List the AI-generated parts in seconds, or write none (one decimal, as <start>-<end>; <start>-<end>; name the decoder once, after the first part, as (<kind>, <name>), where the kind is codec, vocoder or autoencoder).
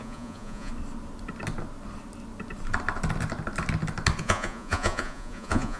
0.0-0.7 (vocoder, Vocos); 4.2-5.8